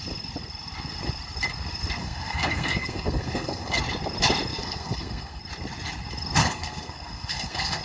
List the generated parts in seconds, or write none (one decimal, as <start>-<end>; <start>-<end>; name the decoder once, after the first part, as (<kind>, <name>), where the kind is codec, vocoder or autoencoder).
2.0-3.8 (codec, SNAC); 4.5-5.4; 6.4-7.8